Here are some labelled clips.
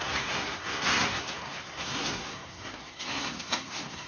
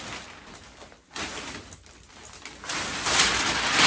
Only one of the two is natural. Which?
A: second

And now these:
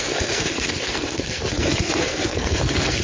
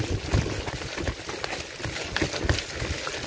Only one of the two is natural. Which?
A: second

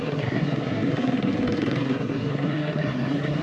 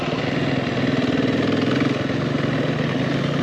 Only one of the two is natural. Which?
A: second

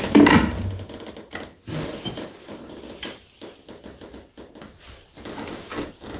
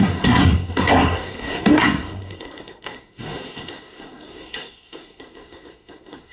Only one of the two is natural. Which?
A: first